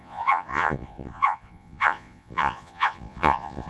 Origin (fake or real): fake